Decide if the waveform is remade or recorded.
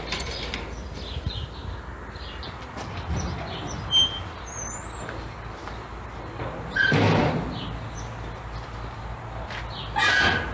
recorded